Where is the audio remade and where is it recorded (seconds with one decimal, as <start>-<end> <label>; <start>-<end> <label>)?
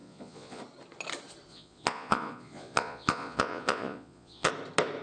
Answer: 0.0-0.6 remade; 0.6-1.5 recorded; 1.5-4.5 remade; 4.5-5.0 recorded